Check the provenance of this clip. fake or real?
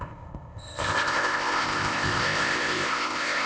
fake